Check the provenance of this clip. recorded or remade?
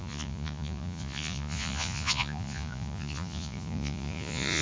remade